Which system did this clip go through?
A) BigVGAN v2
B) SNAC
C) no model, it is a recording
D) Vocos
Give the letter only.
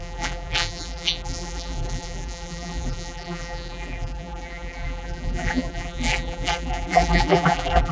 A